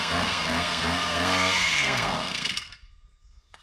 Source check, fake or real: fake